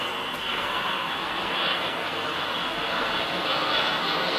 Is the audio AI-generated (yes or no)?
yes